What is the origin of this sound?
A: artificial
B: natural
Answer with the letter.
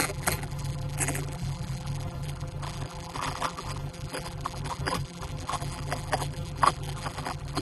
A